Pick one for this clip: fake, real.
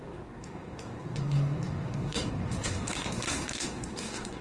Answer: fake